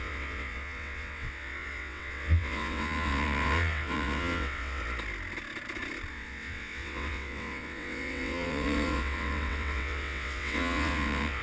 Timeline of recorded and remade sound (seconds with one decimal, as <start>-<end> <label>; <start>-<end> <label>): 0.0-4.8 remade; 4.8-6.1 recorded; 6.1-11.4 remade

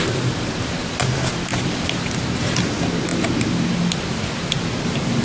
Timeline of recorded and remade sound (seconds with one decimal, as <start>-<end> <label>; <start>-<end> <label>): 0.0-5.2 recorded

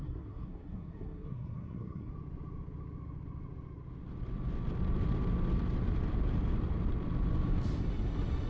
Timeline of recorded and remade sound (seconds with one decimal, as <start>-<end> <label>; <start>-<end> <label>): 0.0-2.1 remade; 2.1-8.5 recorded

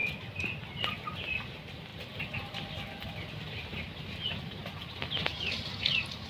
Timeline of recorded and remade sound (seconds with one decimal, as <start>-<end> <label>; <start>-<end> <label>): 0.0-6.3 recorded

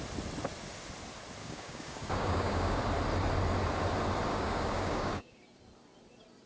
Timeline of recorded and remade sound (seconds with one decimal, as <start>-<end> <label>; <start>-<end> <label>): 0.0-1.4 recorded; 1.4-2.8 remade; 2.8-4.3 recorded; 4.3-5.4 remade; 5.4-6.5 recorded

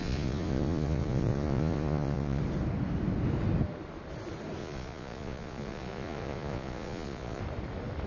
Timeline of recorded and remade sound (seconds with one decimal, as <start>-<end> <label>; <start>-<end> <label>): 0.0-2.4 remade; 2.4-4.6 recorded; 4.6-7.4 remade; 7.4-8.1 recorded

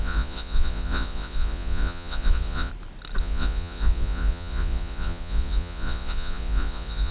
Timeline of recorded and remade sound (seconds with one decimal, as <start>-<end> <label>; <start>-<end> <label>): 0.0-2.7 remade; 2.7-3.2 recorded; 3.2-7.1 remade